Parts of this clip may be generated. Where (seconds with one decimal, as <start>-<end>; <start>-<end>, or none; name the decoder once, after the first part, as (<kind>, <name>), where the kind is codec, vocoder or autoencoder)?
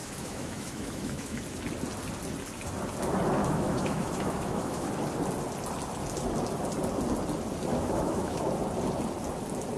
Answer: 0.0-1.4 (autoencoder, DAC-VAE); 3.4-4.9; 7.7-8.4